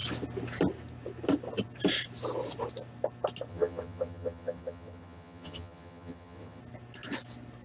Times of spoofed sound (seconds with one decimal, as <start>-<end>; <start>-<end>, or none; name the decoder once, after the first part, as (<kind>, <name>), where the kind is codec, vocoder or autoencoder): 3.5-6.6 (vocoder, HiFi-GAN)